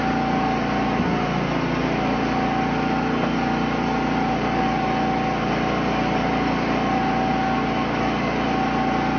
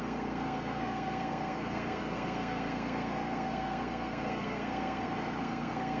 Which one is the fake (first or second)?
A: second